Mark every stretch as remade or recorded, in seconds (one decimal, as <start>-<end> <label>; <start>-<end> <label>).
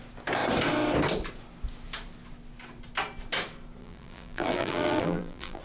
0.0-3.8 recorded; 3.8-5.6 remade